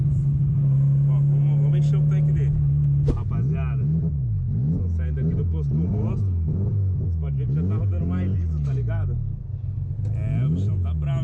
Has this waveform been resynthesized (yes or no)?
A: no